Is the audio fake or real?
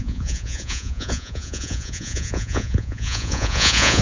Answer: fake